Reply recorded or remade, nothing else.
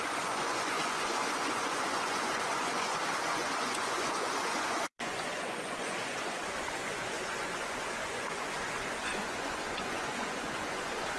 remade